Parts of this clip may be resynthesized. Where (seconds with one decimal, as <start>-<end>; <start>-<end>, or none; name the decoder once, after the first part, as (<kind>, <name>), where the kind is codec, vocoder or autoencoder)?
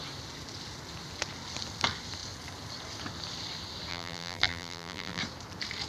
3.9-5.2 (vocoder, BigVGAN v2)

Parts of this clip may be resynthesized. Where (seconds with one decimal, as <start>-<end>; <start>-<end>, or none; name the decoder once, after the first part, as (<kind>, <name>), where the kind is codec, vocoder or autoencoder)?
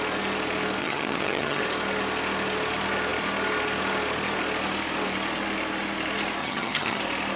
0.8-1.6 (vocoder, HiFi-GAN); 6.4-7.0